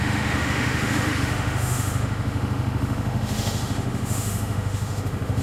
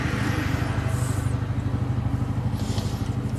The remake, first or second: first